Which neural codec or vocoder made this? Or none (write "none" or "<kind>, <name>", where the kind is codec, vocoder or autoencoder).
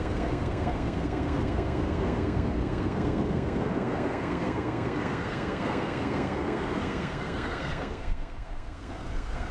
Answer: codec, SNAC